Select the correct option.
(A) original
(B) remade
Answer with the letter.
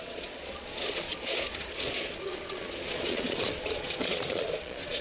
B